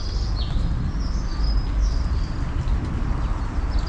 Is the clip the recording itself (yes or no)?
yes